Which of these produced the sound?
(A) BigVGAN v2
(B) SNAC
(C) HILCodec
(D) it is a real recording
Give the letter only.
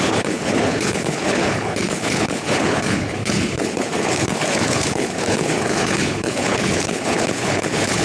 C